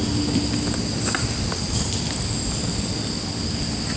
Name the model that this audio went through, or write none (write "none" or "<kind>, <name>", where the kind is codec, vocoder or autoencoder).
none